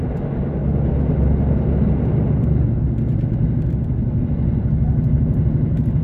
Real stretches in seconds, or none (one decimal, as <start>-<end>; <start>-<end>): 0.0-3.1; 4.2-6.0